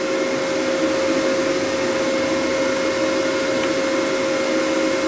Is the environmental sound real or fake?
real